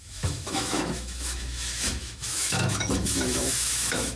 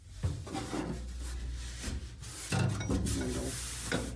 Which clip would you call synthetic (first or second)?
first